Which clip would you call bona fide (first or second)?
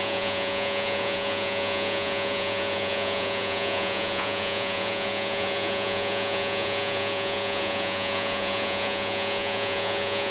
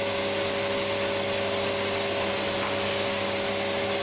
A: second